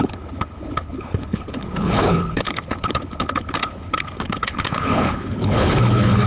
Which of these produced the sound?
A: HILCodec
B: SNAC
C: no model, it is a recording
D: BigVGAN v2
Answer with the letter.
A